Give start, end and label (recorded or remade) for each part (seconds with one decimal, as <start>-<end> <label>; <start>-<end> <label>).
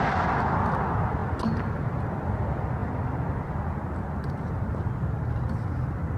0.0-6.2 recorded